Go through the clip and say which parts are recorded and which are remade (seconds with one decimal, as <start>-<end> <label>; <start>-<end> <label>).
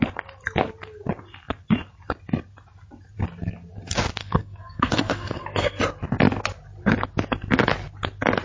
0.0-4.2 recorded; 4.2-5.8 remade; 5.8-8.4 recorded